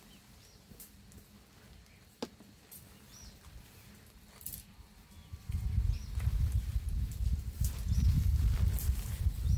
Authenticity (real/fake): real